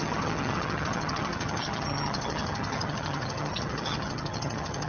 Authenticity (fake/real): fake